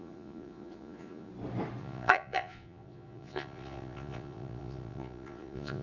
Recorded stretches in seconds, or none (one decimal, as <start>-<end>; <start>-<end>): 1.3-1.8